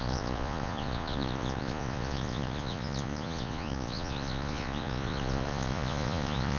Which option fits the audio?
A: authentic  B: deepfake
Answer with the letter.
B